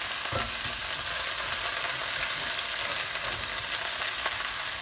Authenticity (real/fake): real